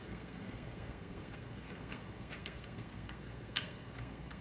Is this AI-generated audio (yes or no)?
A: yes